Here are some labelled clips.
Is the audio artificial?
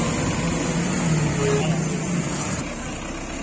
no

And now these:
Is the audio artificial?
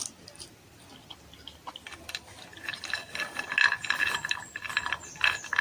no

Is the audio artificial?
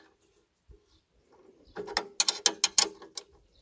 no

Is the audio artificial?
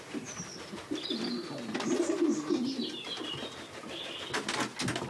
no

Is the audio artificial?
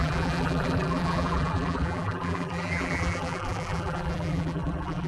yes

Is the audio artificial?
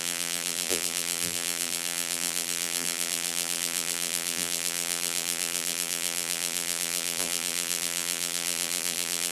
yes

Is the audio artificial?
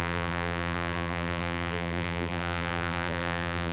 yes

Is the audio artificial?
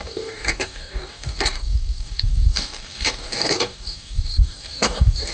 yes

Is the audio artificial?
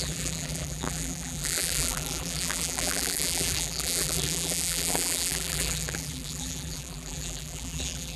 yes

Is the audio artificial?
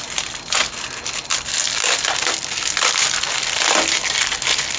no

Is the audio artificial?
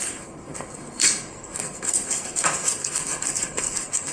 yes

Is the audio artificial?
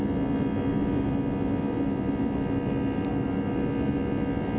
no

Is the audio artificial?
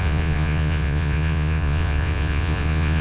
yes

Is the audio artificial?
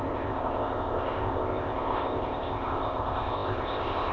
yes